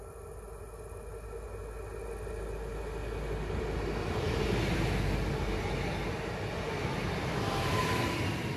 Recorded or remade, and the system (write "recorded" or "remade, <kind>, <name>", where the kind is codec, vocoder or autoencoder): recorded